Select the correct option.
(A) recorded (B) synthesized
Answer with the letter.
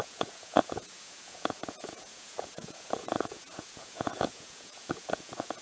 B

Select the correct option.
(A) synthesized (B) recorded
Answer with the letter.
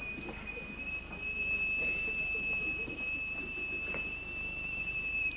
B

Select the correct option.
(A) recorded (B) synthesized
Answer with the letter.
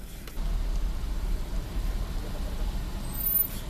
A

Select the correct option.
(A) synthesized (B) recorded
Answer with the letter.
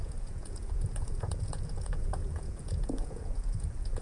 A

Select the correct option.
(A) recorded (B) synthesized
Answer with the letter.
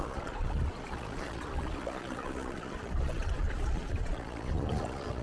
B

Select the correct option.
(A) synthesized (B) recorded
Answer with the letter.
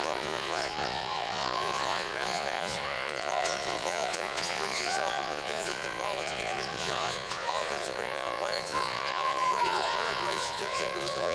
A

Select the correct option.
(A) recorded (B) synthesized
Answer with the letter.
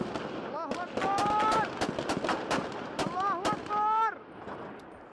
A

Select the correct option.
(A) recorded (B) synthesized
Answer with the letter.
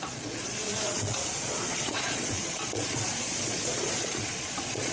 B